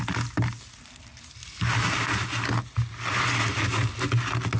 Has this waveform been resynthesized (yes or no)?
no